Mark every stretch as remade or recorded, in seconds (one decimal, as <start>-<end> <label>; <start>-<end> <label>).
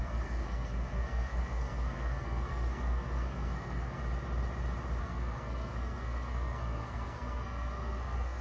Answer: 0.0-4.0 remade; 4.0-5.0 recorded; 5.0-8.4 remade